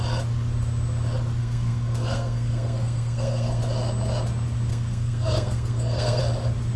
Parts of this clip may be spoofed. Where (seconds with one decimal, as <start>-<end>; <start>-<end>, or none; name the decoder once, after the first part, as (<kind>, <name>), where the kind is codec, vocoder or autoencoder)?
1.4-3.6 (codec, SNAC); 4.7-6.2